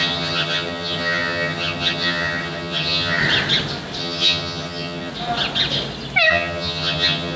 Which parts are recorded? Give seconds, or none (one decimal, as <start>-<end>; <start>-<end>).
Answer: 3.2-4.0; 5.1-6.3

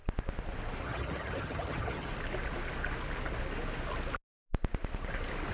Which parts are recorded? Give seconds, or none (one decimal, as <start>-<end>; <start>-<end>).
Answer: 0.0-0.8; 2.1-5.5

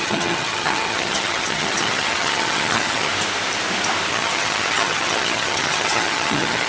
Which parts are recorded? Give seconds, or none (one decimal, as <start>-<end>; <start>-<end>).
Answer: 3.1-4.1

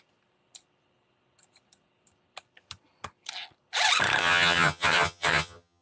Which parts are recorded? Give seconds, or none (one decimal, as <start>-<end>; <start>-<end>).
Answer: 0.0-4.2

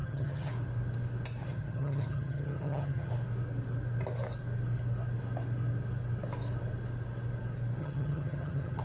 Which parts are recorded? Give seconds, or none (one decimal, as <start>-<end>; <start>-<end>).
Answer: 0.5-1.4; 3.1-7.8